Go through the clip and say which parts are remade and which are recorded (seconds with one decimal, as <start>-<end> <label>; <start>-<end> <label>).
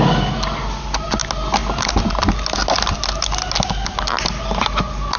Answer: 0.0-5.2 recorded